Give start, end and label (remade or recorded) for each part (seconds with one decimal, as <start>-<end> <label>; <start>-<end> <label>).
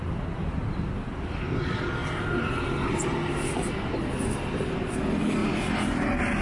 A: 0.0-6.4 recorded